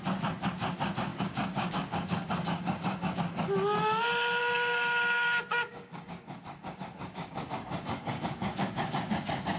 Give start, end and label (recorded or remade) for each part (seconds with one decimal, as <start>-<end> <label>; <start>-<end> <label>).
0.0-1.1 recorded; 1.1-3.1 remade; 3.1-4.4 recorded; 4.4-9.1 remade; 9.1-9.6 recorded